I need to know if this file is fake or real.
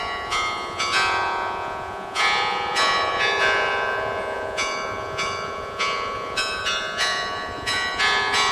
fake